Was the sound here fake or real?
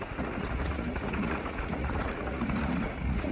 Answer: fake